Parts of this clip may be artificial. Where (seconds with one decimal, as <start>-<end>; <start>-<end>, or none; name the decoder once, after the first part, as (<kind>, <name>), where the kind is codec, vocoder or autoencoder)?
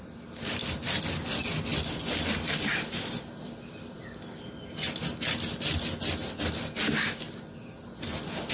0.0-5.0 (vocoder, BigVGAN v2); 7.8-8.5